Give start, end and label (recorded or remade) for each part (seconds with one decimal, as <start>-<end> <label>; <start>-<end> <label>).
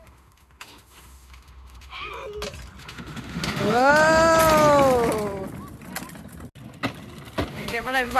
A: 0.0-2.1 remade; 2.1-2.8 recorded; 2.8-3.9 remade; 3.9-7.5 recorded; 7.5-8.2 remade